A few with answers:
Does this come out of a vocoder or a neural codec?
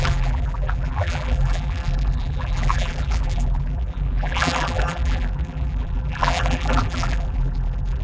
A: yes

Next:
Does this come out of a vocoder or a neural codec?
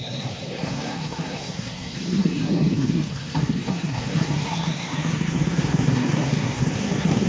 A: yes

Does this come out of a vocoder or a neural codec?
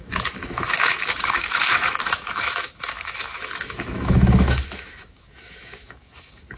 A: yes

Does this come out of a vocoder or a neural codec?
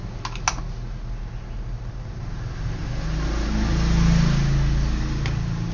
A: no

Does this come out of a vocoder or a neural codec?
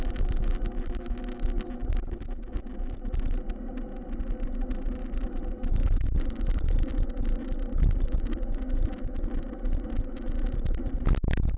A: no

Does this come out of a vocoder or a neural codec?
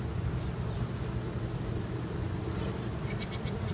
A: no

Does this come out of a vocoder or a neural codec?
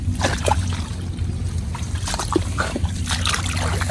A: no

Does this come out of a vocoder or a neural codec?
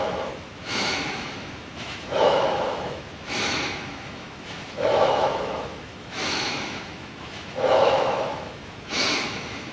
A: yes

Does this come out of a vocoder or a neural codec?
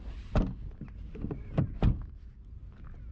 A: no